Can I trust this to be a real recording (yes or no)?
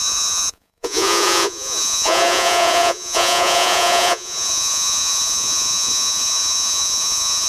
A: no